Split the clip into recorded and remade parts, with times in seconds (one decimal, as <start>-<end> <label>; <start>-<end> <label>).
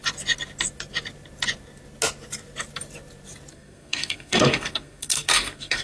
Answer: 0.0-3.5 recorded; 3.5-5.8 remade